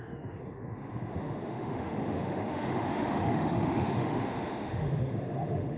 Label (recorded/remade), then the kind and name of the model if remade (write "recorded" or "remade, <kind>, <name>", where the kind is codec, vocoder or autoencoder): remade, autoencoder, DAC-VAE